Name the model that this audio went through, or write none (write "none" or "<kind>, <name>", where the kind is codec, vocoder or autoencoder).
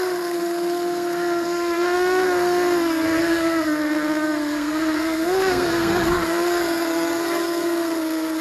codec, SNAC